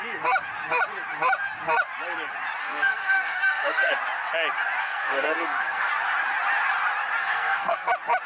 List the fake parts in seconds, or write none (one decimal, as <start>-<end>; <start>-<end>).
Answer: 2.6-3.9; 4.8-5.9; 7.2-7.9